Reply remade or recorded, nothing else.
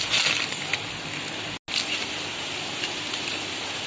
recorded